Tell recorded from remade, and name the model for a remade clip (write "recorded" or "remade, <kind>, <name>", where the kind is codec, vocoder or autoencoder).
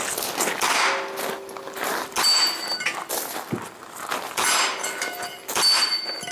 recorded